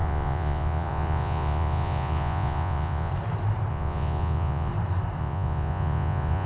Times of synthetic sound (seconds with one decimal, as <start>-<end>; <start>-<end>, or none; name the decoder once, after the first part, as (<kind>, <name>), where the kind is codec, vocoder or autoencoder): 0.0-3.1 (vocoder, Vocos); 3.7-4.7; 5.2-6.5